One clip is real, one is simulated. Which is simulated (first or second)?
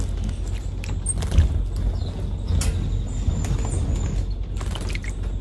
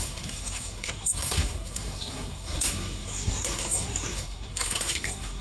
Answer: second